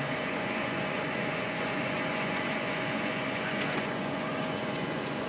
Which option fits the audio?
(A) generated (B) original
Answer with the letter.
A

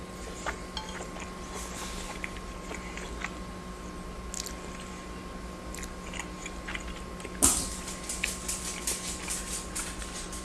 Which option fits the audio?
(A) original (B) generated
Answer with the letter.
A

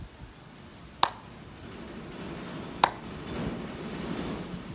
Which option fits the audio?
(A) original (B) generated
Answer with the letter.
A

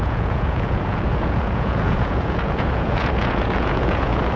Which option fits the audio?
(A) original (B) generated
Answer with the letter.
B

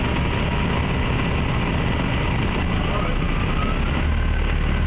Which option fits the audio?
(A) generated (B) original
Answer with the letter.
B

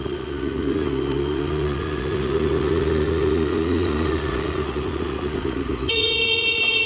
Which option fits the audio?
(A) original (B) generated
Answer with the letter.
B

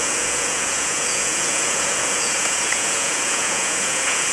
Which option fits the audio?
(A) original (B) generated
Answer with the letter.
B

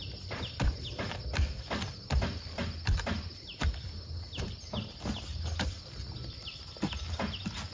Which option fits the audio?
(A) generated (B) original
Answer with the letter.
B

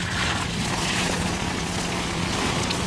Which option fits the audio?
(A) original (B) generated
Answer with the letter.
B